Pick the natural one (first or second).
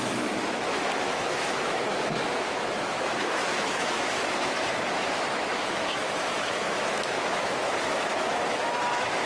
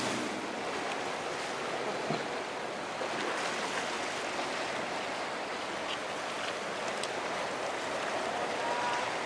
second